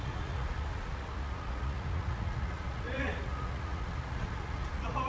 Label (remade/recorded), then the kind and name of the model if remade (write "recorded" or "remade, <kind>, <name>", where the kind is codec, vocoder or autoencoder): remade, vocoder, Vocos